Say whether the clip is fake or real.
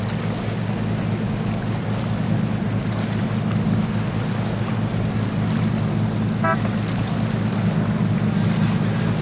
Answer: real